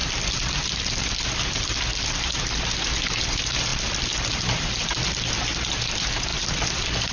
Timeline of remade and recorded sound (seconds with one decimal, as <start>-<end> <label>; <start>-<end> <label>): 0.0-0.7 remade; 0.7-3.7 recorded; 3.7-5.3 remade; 5.3-6.3 recorded; 6.3-7.1 remade